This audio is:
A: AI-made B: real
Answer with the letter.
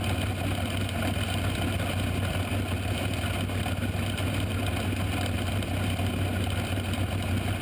B